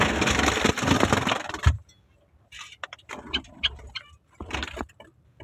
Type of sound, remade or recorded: recorded